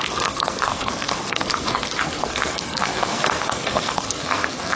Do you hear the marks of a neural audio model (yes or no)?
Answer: yes